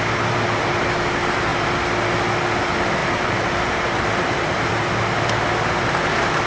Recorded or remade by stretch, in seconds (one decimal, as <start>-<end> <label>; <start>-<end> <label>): 0.0-3.0 recorded; 3.0-4.7 remade; 4.7-6.5 recorded